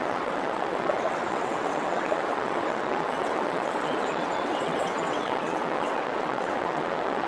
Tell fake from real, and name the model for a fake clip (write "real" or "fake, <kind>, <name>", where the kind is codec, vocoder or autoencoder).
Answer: fake, vocoder, WaveNeXt